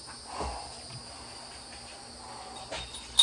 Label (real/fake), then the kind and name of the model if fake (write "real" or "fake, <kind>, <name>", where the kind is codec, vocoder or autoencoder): real